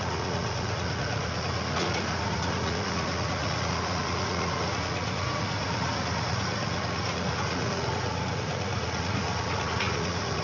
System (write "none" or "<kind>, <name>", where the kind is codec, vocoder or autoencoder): vocoder, Vocos